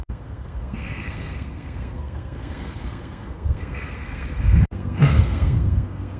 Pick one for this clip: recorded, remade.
remade